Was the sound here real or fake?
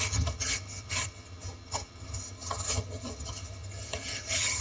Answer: fake